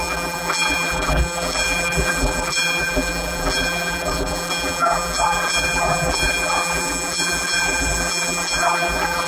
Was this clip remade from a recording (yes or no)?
yes